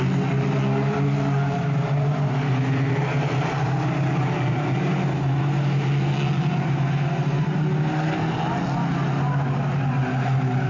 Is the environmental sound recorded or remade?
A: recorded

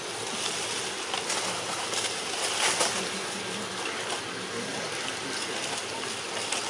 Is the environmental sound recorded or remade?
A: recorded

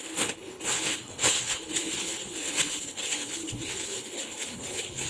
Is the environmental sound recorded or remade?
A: remade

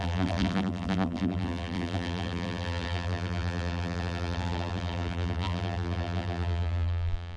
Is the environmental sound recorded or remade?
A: remade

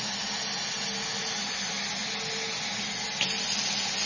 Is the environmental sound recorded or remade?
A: recorded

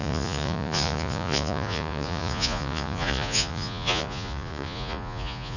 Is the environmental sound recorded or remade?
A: remade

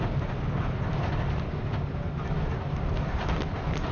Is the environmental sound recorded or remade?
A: recorded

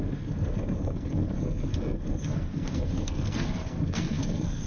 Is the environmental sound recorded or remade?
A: remade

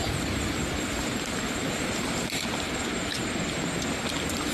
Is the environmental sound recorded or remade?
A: recorded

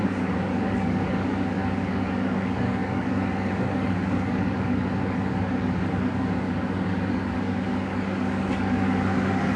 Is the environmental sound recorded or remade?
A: remade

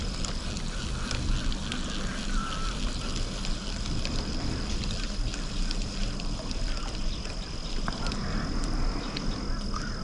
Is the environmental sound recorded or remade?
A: recorded